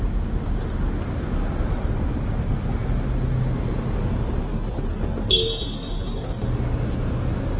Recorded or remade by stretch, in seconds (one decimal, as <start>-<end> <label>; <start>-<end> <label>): 0.0-7.6 recorded